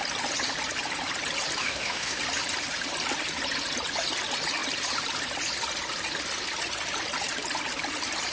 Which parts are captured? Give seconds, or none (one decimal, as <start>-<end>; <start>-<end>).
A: 0.0-1.6; 2.2-8.3